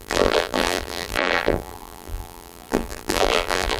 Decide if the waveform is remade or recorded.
remade